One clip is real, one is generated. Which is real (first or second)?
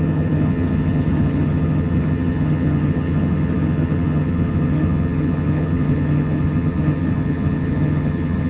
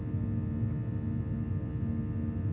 second